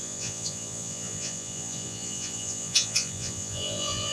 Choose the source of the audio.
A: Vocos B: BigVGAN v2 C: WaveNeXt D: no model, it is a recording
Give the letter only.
A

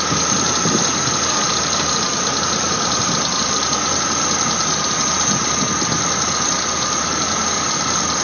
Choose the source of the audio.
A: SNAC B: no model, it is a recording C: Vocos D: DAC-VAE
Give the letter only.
B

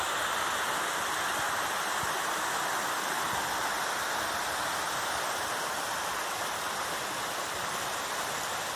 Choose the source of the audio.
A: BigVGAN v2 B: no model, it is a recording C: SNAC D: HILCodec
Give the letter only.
B